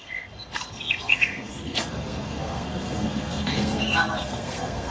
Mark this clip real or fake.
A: fake